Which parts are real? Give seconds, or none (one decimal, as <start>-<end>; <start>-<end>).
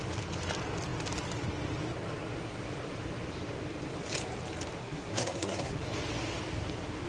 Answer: 0.0-4.8; 5.8-7.1